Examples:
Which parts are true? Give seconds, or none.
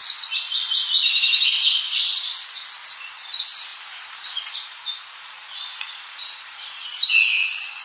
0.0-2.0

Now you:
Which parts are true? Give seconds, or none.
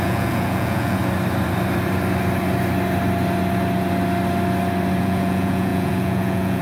1.0-5.0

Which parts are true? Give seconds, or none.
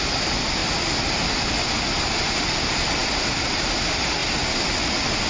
0.0-5.3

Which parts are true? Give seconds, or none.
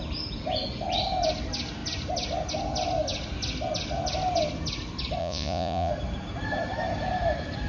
0.0-5.2; 5.9-7.7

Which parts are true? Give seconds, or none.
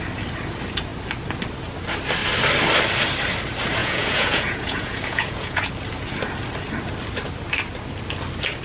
0.0-3.8; 5.7-8.6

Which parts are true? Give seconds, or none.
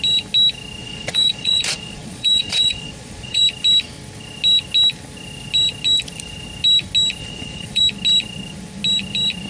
0.0-0.8; 3.4-7.2; 7.8-9.5